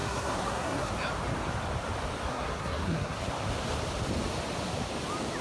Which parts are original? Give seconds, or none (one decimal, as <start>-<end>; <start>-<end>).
0.9-2.3; 3.2-5.4